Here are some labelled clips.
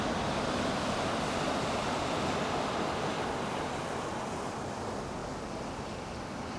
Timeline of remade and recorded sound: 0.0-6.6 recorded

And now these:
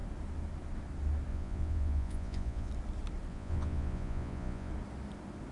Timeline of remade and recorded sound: 0.0-1.3 recorded; 1.3-2.7 remade; 2.7-3.3 recorded; 3.3-4.7 remade; 4.7-5.5 recorded

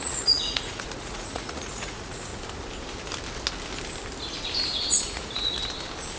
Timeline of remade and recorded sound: 0.0-2.3 remade; 2.3-5.0 recorded; 5.0-5.6 remade; 5.6-6.2 recorded